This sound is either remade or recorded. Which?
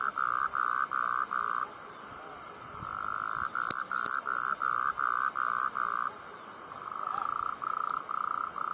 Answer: recorded